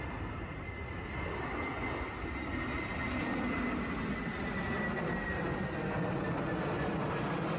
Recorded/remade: recorded